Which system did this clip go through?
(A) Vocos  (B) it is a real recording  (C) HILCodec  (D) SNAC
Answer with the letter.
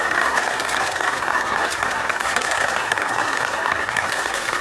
D